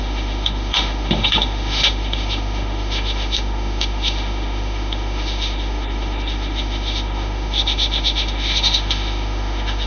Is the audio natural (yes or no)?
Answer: no